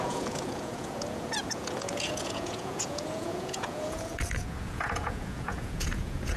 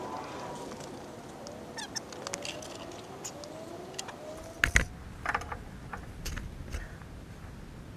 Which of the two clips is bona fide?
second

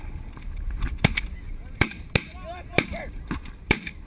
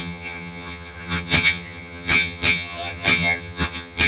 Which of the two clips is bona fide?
first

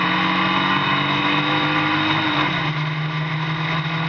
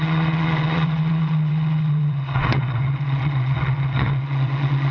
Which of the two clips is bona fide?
first